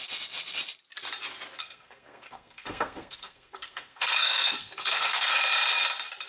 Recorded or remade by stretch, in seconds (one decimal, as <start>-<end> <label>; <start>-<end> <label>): 0.0-1.6 recorded; 1.6-5.4 remade; 5.4-6.3 recorded